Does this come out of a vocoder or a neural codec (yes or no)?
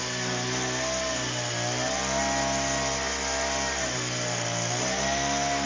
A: no